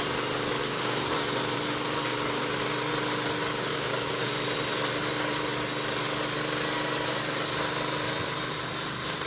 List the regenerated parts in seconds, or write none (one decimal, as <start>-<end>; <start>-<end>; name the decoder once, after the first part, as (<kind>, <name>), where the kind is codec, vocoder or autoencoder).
0.6-1.1 (codec, DAC); 3.7-4.3